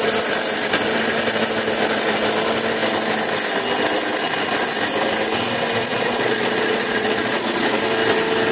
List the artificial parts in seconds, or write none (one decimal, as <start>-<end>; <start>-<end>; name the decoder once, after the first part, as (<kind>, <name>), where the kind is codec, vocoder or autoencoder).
5.8-7.8 (vocoder, Vocos)